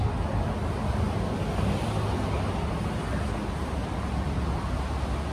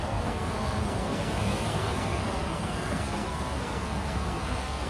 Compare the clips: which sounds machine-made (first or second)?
second